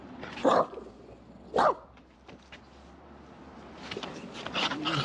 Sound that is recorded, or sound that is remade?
remade